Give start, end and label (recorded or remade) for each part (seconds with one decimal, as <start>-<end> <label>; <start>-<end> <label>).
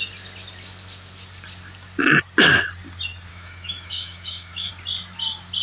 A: 0.0-3.3 recorded; 3.3-4.7 remade; 4.7-5.6 recorded